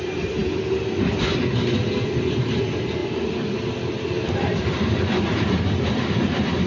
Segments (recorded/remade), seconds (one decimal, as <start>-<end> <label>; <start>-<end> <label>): 0.0-6.7 recorded

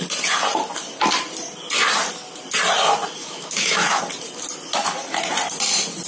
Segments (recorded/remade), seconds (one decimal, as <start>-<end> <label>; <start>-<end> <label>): 0.0-3.2 recorded; 3.2-4.0 remade; 4.0-6.1 recorded

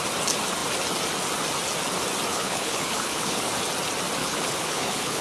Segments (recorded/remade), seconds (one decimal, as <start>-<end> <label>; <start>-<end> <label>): 0.0-2.3 recorded; 2.3-3.5 remade; 3.5-4.2 recorded; 4.2-5.2 remade

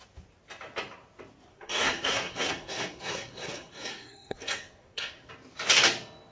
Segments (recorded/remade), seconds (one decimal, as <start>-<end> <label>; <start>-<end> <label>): 0.0-1.5 recorded; 1.5-5.3 remade; 5.3-6.3 recorded